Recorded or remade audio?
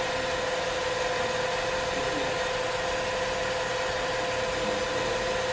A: recorded